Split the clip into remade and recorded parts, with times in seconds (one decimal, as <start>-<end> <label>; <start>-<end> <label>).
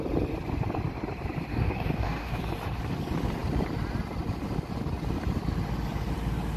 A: 0.0-1.5 recorded; 1.5-2.4 remade; 2.4-6.6 recorded